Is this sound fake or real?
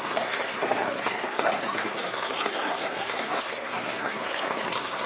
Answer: fake